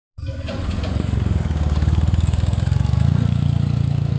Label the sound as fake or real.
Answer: fake